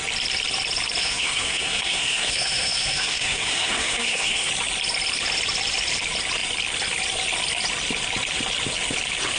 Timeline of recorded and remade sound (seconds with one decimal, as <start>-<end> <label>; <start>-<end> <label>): 0.0-1.0 recorded; 1.0-4.5 remade; 4.5-9.4 recorded